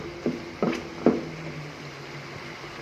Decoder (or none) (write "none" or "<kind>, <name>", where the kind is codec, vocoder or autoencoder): none